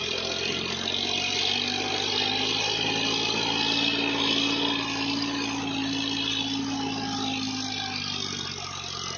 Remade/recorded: recorded